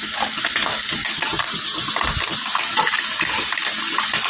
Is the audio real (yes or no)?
yes